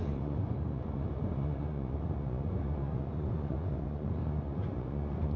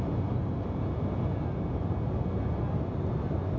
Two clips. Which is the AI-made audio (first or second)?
first